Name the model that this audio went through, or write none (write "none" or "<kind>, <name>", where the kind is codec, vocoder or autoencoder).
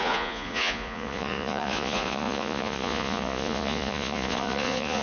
vocoder, Vocos